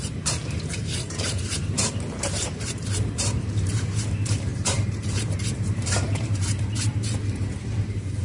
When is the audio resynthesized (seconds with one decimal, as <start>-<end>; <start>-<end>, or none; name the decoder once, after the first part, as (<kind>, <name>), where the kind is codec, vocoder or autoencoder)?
0.0-8.2 (vocoder, BigVGAN v2)